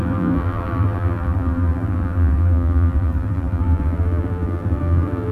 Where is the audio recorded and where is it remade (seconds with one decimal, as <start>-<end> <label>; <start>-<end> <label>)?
0.0-5.3 remade